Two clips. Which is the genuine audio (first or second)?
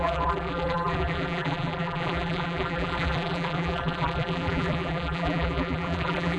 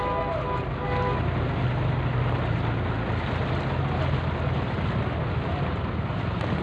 second